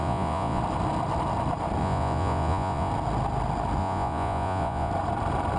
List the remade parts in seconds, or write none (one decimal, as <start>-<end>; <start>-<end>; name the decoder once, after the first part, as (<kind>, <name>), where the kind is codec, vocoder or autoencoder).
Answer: 0.0-0.6 (vocoder, Vocos); 1.8-2.9; 3.8-4.9